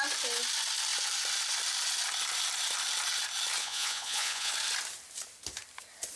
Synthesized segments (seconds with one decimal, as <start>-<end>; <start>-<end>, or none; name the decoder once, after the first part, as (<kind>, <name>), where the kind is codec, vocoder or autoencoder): 3.6-4.5 (vocoder, Vocos)